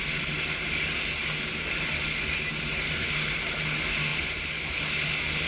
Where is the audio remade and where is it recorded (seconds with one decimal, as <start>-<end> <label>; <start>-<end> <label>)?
0.0-5.5 recorded